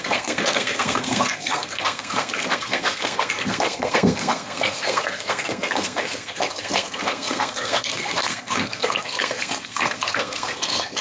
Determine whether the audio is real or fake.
fake